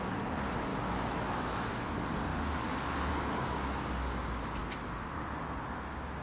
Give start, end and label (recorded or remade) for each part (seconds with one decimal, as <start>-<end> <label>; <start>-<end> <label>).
0.0-0.7 recorded; 0.7-1.7 remade; 1.7-6.2 recorded

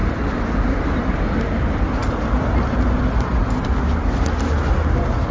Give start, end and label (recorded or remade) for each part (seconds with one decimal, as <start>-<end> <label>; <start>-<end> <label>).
0.0-5.3 recorded

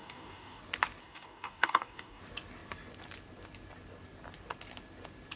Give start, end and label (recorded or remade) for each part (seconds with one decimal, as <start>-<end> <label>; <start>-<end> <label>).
0.0-0.6 remade; 0.6-1.0 recorded; 1.0-2.2 remade; 2.2-5.4 recorded

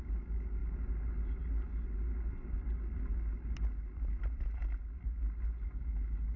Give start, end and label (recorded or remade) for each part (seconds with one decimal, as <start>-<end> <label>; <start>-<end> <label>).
0.0-6.4 recorded

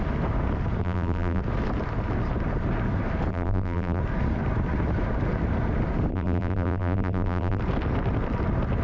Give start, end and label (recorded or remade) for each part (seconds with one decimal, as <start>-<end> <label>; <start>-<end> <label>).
0.0-0.8 recorded; 0.8-1.4 remade; 1.4-3.3 recorded; 3.3-4.0 remade; 4.0-6.1 recorded; 6.1-7.6 remade; 7.6-8.8 recorded

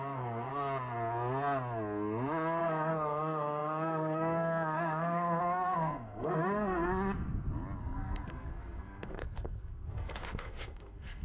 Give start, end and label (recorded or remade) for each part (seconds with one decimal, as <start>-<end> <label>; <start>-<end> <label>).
0.0-0.5 remade; 0.5-2.6 recorded; 2.6-6.9 remade; 6.9-7.8 recorded; 7.8-11.2 remade